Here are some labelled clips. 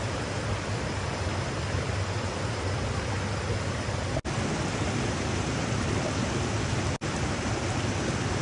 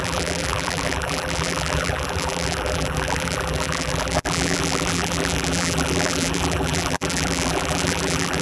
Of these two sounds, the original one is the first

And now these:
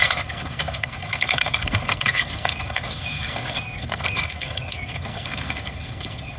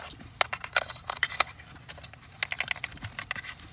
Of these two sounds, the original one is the second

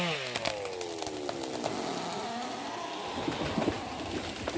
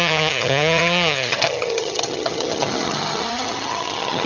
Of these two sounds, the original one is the first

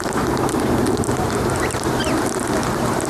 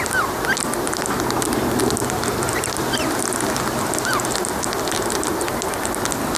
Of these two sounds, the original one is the second